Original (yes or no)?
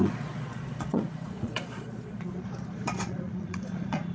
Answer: no